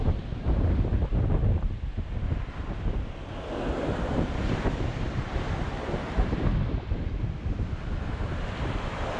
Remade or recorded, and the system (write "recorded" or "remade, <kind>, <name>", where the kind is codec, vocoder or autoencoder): recorded